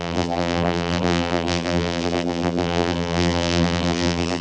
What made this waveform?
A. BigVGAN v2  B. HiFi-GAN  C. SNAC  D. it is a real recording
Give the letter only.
A